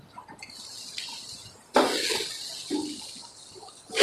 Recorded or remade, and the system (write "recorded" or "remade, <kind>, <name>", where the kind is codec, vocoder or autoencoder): recorded